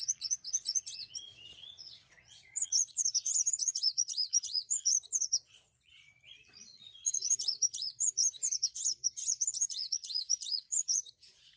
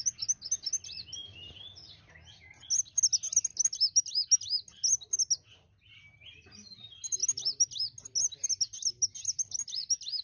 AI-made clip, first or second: first